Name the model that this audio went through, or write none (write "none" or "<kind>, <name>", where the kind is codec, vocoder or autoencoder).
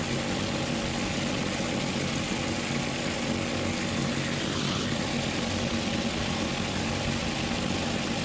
none